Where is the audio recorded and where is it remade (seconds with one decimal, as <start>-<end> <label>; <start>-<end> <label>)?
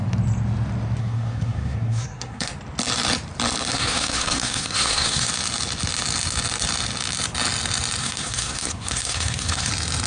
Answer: 0.0-1.0 recorded; 1.0-2.5 remade; 2.5-3.7 recorded; 3.7-5.3 remade; 5.3-8.0 recorded; 8.0-9.7 remade; 9.7-10.1 recorded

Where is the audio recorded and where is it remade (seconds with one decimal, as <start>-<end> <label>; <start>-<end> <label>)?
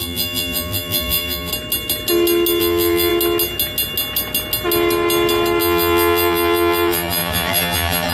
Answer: 0.0-1.5 remade; 1.5-2.6 recorded; 2.6-3.1 remade; 3.1-5.6 recorded; 5.6-8.1 remade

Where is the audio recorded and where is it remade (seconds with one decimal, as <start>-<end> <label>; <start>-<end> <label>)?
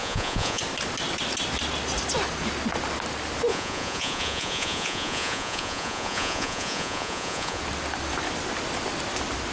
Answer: 0.0-0.6 remade; 0.6-3.5 recorded; 3.5-7.6 remade; 7.6-9.5 recorded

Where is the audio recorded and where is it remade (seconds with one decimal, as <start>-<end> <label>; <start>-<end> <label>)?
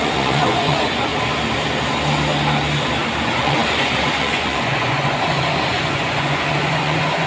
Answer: 0.0-1.1 remade; 1.1-3.2 recorded; 3.2-7.3 remade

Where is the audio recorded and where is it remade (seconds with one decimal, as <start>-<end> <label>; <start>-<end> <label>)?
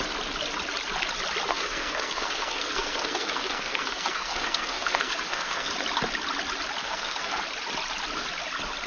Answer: 0.0-1.5 recorded; 1.5-5.7 remade; 5.7-6.8 recorded; 6.8-7.4 remade; 7.4-8.9 recorded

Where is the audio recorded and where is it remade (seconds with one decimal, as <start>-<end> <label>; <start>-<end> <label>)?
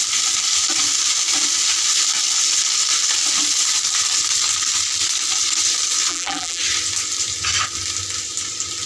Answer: 0.0-6.1 recorded; 6.1-6.6 remade; 6.6-8.9 recorded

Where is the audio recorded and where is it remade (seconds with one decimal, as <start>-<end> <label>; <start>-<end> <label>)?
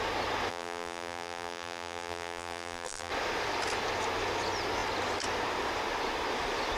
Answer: 0.0-0.5 recorded; 0.5-3.1 remade; 3.1-6.8 recorded